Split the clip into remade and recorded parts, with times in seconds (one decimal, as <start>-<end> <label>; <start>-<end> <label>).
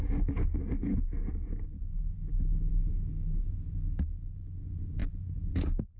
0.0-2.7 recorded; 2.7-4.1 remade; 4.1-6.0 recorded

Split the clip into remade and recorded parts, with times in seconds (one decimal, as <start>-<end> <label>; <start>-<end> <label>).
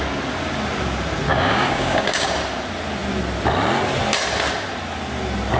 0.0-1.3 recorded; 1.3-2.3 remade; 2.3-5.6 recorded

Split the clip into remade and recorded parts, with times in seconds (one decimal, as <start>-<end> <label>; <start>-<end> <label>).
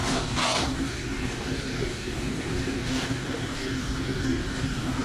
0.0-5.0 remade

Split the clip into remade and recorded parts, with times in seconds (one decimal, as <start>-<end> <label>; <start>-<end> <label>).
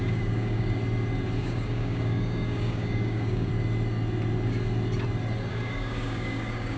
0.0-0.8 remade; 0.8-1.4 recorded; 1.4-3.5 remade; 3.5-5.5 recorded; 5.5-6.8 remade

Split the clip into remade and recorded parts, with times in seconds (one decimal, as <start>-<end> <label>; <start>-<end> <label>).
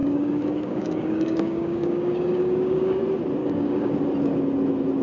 0.0-3.0 remade; 3.0-3.4 recorded; 3.4-3.9 remade; 3.9-5.0 recorded